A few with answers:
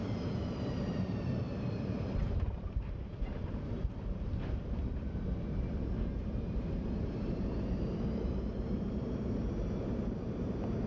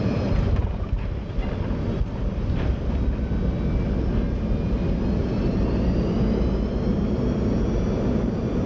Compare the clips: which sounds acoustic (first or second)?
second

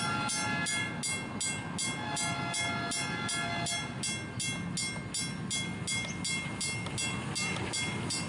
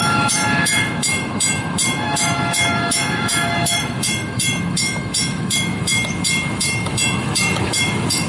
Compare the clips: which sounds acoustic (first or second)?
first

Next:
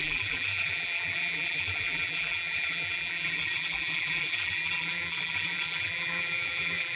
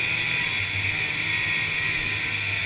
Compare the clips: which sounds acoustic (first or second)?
second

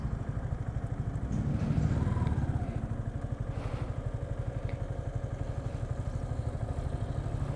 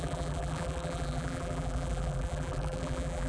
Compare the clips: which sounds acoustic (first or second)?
first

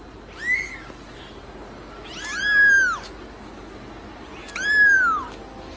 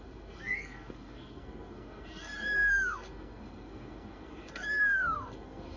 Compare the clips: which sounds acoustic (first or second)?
first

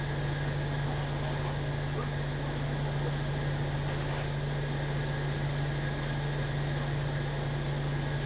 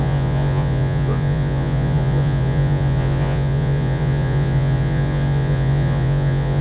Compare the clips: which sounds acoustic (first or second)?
first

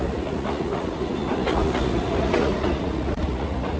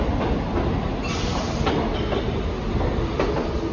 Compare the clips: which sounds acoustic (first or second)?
second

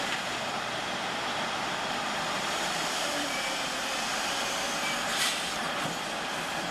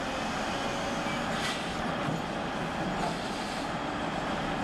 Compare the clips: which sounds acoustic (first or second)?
second